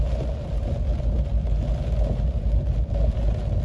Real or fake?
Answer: real